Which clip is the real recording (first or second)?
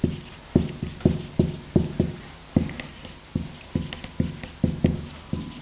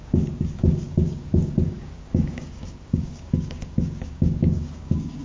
first